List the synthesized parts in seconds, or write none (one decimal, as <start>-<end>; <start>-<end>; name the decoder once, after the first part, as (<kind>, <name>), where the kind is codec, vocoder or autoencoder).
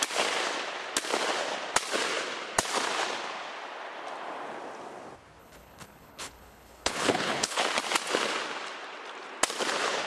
5.4-7.6 (codec, HILCodec)